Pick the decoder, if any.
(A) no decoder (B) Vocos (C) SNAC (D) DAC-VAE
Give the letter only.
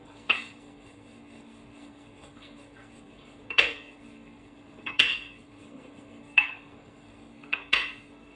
C